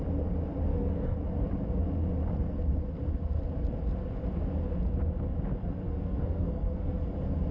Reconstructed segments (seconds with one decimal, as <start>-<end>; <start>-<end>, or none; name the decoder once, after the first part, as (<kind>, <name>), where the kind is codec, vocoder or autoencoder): 0.7-1.2 (codec, SNAC); 5.6-7.0